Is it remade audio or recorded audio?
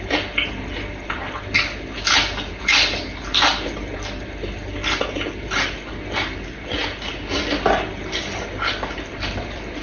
recorded